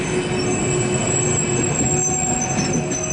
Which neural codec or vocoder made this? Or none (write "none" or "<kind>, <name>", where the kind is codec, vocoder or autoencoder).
none